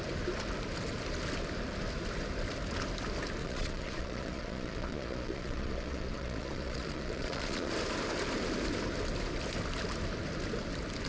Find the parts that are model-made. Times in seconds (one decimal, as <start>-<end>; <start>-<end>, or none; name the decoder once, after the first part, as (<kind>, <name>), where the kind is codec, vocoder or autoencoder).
3.4-7.7 (vocoder, Vocos)